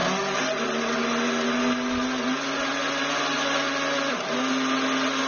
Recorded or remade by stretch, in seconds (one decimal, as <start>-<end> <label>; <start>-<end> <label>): 0.0-5.3 recorded